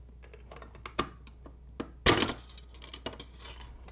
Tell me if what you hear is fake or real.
real